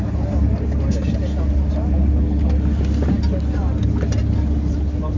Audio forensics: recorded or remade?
recorded